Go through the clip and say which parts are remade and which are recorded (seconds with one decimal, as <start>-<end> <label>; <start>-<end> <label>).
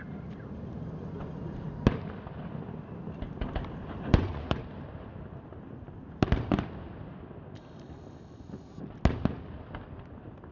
0.0-4.1 recorded; 4.1-4.6 remade; 4.6-10.5 recorded